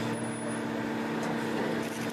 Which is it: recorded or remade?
recorded